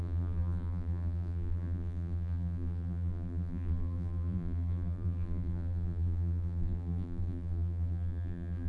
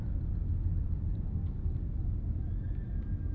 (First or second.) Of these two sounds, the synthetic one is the first